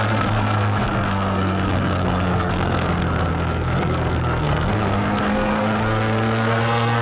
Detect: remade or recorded remade